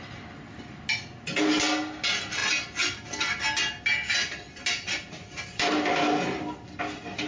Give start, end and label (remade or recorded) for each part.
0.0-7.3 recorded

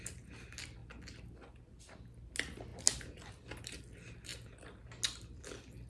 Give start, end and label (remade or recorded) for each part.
0.0-5.9 recorded